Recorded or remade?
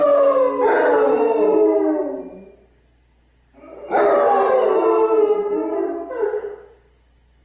recorded